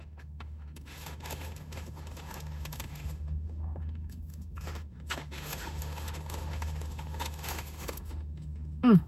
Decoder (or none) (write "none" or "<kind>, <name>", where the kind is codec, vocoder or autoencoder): autoencoder, DAC-VAE